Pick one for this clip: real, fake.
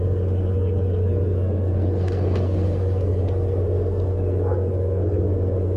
fake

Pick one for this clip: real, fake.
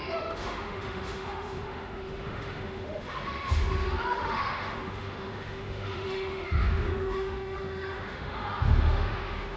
fake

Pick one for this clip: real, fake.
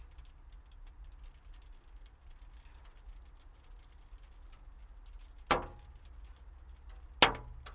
real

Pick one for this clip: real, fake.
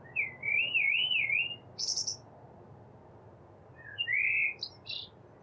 real